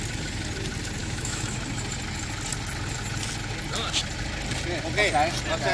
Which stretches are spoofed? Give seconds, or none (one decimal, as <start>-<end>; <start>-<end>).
1.0-1.6